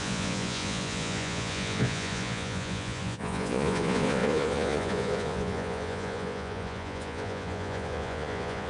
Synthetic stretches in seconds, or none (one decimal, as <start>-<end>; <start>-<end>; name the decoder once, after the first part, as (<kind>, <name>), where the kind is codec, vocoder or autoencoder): 0.0-8.7 (vocoder, Vocos)